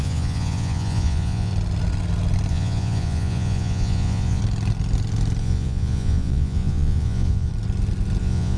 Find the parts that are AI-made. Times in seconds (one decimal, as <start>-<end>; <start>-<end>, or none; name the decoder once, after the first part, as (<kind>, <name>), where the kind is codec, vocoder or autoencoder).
0.0-1.5 (vocoder, Vocos); 2.5-4.4; 5.4-7.5; 8.2-8.6